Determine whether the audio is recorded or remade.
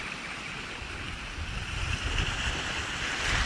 recorded